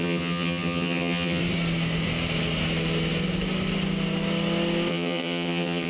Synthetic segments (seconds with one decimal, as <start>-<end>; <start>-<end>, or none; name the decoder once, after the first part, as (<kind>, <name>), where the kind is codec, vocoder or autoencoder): 0.0-1.4 (vocoder, HiFi-GAN); 4.9-5.9